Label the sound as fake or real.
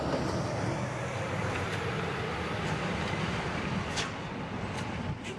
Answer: fake